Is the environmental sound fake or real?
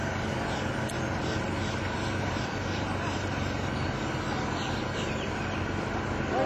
real